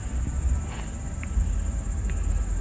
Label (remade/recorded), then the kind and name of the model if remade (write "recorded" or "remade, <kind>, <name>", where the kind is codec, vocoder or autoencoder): recorded